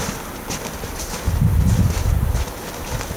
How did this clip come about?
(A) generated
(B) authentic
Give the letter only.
B